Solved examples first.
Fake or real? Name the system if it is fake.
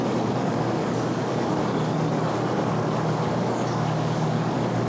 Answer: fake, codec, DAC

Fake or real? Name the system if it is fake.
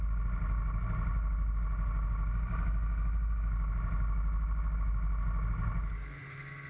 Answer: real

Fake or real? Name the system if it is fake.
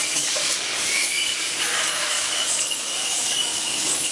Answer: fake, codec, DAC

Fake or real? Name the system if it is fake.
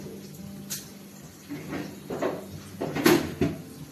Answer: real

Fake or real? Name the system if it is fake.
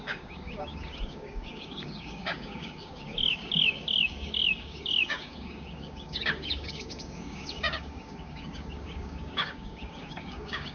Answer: fake, codec, DAC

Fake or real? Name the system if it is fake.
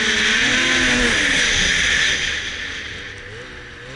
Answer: real